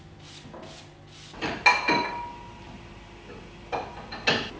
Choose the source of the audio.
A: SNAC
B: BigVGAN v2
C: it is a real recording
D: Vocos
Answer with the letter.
C